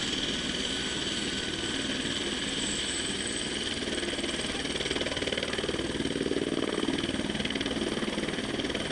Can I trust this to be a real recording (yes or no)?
yes